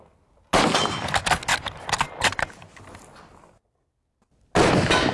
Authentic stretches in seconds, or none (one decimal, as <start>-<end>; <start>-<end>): 0.0-5.1